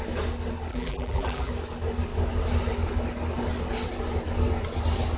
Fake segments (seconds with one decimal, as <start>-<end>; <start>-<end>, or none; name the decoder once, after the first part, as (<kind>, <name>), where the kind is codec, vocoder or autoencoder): 0.7-1.5 (vocoder, BigVGAN v2)